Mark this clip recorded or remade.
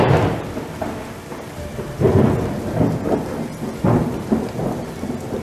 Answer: recorded